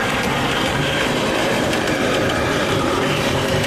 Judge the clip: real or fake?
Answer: fake